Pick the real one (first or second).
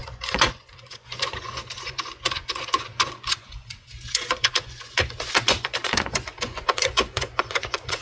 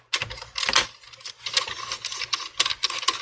second